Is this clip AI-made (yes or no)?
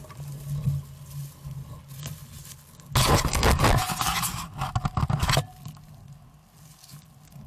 no